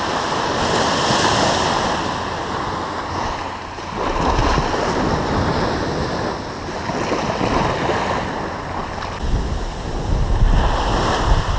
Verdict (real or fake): real